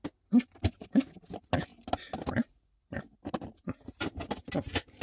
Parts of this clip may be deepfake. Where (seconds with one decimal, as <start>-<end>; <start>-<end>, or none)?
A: none